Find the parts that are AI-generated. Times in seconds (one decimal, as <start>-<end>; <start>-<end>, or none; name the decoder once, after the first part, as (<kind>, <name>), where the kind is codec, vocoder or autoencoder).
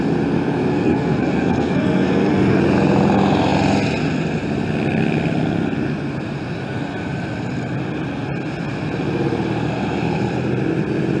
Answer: 0.7-2.6 (codec, SNAC)